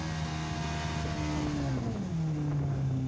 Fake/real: real